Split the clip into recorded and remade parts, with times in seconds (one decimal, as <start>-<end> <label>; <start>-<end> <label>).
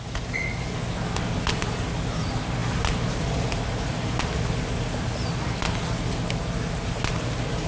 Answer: 0.0-7.7 recorded